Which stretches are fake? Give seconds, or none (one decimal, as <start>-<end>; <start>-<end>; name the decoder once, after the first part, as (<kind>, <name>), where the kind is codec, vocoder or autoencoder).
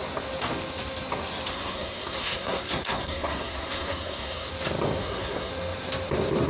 1.5-4.5 (codec, SNAC); 5.0-5.5